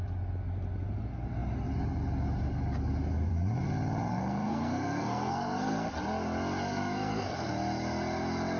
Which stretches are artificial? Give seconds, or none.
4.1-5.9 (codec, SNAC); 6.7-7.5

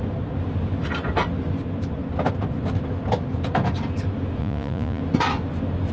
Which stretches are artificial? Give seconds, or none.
4.4-5.0 (vocoder, Vocos)

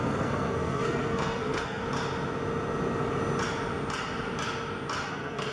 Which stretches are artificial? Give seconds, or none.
0.0-1.8 (codec, SNAC); 5.1-5.5